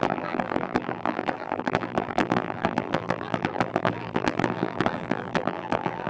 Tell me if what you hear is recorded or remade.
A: remade